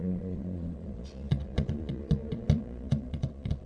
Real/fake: fake